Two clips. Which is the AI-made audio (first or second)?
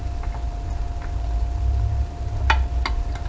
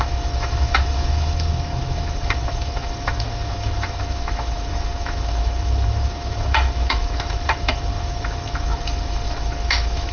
second